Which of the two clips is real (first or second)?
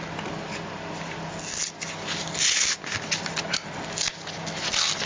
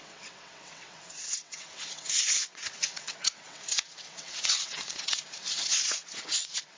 first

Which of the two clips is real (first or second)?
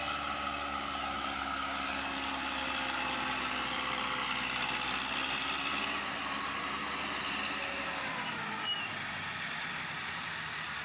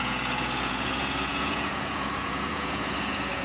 first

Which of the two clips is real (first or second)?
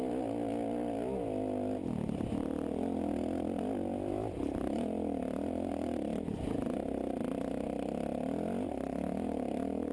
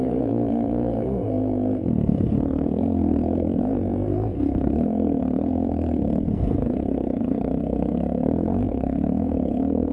first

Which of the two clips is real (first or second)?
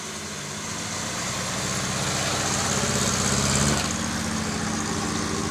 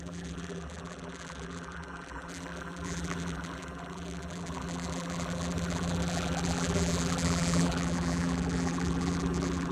first